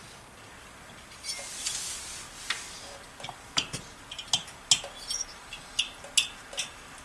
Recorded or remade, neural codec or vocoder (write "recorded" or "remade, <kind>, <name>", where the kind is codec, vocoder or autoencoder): recorded